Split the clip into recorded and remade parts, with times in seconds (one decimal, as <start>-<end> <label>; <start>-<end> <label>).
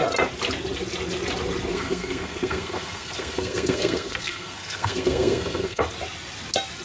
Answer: 0.0-1.7 recorded; 1.7-5.8 remade; 5.8-6.8 recorded